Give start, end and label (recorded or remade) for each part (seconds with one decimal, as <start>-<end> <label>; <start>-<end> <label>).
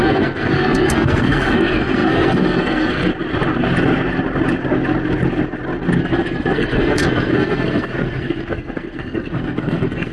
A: 0.0-3.1 remade; 3.1-6.0 recorded; 6.0-10.1 remade